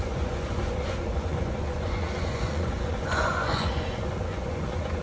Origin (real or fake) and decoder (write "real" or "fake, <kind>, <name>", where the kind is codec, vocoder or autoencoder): fake, vocoder, Vocos